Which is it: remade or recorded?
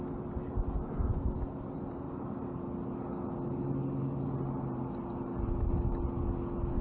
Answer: recorded